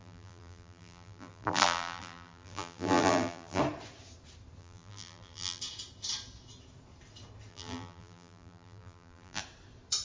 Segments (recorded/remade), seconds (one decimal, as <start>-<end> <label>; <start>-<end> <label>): 0.0-3.6 remade; 3.6-4.6 recorded; 4.6-5.6 remade; 5.6-7.5 recorded; 7.5-9.4 remade; 9.4-10.0 recorded